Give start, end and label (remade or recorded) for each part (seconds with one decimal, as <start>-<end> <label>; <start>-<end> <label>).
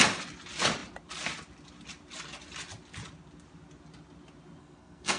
0.0-4.6 recorded; 4.6-5.2 remade